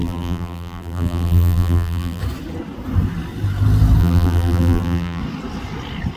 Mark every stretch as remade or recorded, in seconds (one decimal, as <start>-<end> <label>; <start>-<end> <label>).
0.0-2.2 remade; 2.2-4.0 recorded; 4.0-5.2 remade; 5.2-6.2 recorded